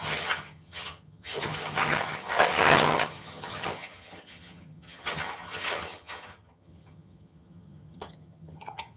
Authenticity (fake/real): fake